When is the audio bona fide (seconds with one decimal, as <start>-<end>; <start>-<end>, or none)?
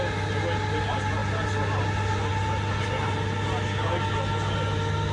0.0-5.1